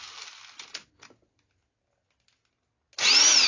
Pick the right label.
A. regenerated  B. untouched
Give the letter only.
B